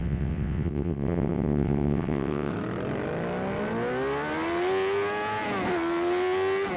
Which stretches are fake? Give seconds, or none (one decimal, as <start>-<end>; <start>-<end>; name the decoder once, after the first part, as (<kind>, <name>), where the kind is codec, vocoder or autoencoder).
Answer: 0.0-2.5 (vocoder, WaveNeXt)